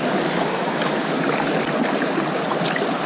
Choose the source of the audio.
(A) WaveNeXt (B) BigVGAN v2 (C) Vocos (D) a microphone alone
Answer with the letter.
D